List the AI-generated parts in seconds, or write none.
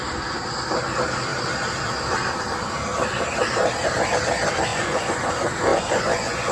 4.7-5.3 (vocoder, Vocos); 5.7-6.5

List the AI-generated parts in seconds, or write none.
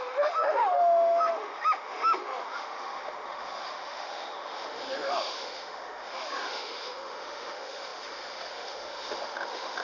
0.0-9.8 (autoencoder, DAC-VAE)